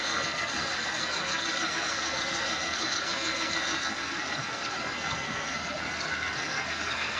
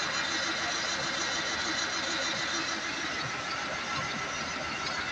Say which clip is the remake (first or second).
first